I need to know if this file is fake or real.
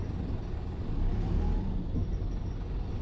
real